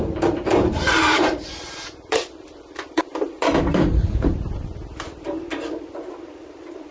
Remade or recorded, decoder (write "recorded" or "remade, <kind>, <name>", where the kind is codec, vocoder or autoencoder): remade, vocoder, BigVGAN v2